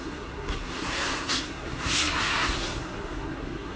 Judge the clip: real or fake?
fake